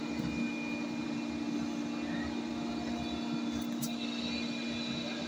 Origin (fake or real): real